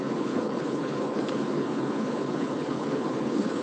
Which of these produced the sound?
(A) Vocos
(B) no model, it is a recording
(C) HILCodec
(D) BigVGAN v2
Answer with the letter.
C